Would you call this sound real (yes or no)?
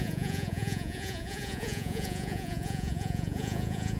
no